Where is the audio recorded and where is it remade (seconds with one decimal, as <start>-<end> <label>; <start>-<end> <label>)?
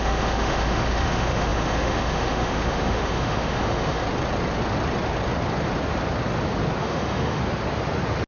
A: 0.0-4.0 remade; 4.0-6.8 recorded; 6.8-7.4 remade; 7.4-8.3 recorded